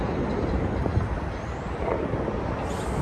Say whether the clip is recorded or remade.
recorded